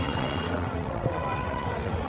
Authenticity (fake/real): fake